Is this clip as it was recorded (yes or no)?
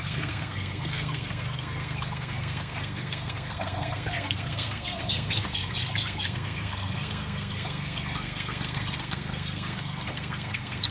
no